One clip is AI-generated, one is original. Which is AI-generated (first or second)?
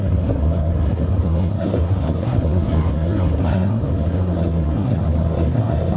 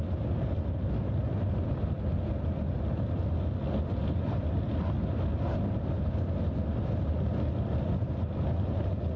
first